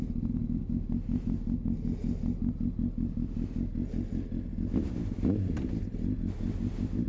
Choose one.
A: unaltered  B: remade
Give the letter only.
A